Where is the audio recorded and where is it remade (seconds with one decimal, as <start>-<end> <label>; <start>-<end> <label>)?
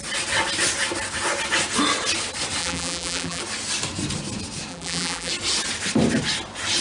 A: 0.0-2.6 recorded; 2.6-3.4 remade; 3.4-4.7 recorded; 4.7-5.3 remade; 5.3-6.8 recorded